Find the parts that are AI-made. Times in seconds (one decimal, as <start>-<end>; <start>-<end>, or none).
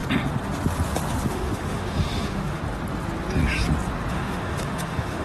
1.3-2.6; 4.1-5.2